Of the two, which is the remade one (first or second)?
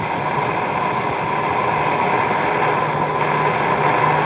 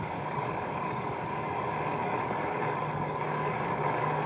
second